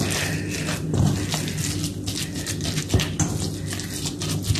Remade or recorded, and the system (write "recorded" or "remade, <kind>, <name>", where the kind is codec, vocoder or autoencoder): recorded